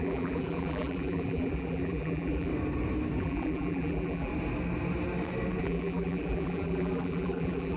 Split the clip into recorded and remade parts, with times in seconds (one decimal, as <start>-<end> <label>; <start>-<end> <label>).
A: 0.0-2.5 remade; 2.5-3.2 recorded; 3.2-4.3 remade; 4.3-5.6 recorded; 5.6-7.8 remade